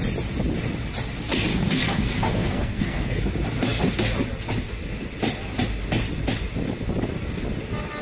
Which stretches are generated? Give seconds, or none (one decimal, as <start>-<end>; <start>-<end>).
1.5-3.2